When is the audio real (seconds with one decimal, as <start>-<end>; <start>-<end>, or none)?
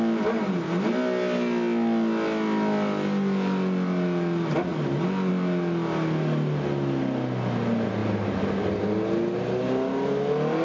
0.0-10.6